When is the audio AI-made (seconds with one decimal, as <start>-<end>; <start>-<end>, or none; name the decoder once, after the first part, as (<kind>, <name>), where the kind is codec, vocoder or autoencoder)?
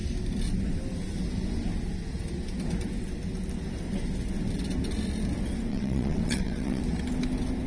5.7-6.8 (vocoder, WaveNeXt)